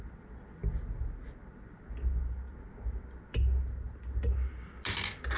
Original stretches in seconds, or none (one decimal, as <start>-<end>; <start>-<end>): 0.0-5.4